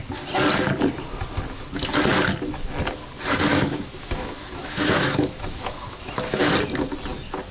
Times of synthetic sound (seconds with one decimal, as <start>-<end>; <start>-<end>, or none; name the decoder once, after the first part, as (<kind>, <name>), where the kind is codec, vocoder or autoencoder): 3.5-6.5 (autoencoder, DAC-VAE)